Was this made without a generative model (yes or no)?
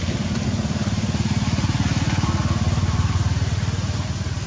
yes